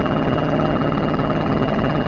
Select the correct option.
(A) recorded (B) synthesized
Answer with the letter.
B